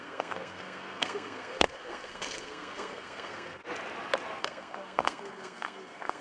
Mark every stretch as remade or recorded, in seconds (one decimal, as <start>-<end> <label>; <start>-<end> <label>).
0.0-3.6 remade; 3.6-4.4 recorded; 4.4-6.2 remade